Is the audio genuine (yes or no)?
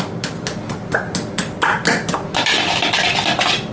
yes